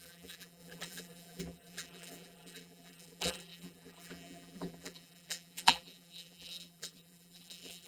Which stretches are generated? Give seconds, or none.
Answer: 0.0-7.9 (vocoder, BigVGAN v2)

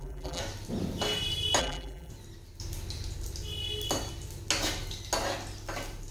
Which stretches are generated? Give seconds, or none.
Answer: 0.0-0.4 (vocoder, BigVGAN v2); 1.6-2.1